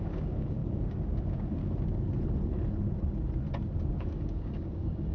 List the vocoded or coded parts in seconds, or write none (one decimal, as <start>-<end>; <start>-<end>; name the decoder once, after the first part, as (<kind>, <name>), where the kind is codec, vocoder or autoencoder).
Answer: 0.0-1.6 (codec, DAC); 3.9-5.1